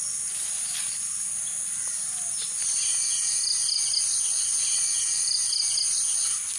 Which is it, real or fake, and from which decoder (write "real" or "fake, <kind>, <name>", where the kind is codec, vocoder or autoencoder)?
real